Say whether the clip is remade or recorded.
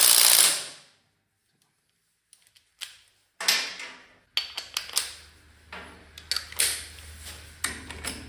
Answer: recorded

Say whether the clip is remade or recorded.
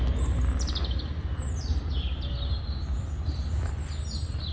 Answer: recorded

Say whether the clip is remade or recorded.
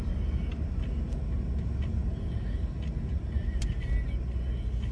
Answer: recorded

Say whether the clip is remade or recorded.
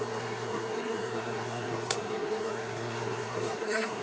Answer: remade